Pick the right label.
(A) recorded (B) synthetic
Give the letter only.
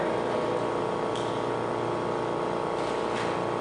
A